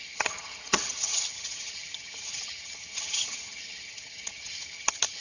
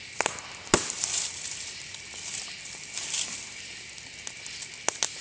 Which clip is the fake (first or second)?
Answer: first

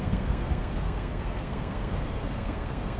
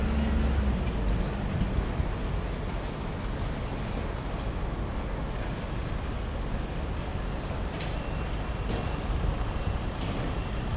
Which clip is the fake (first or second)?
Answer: first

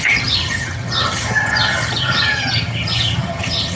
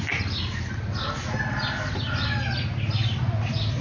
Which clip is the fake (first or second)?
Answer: first